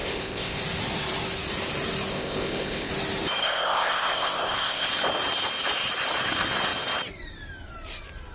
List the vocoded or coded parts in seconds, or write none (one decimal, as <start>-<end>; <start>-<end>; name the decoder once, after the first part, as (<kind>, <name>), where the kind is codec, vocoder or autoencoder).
0.0-0.6 (codec, ZipCodec); 2.1-2.9; 3.4-4.9